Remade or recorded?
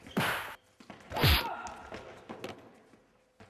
recorded